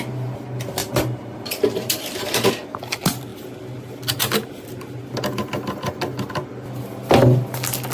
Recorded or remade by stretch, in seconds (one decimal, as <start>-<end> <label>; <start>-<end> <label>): 0.0-0.8 recorded; 0.8-2.5 remade; 2.5-7.9 recorded